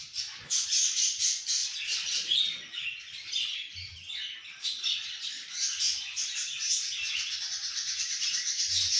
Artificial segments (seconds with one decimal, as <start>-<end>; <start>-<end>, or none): none